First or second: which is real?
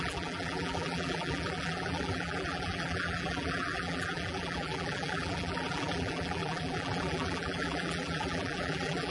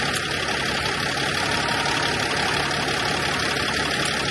second